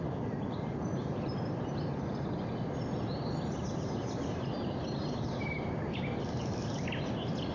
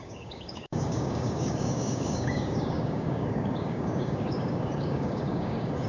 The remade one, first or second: second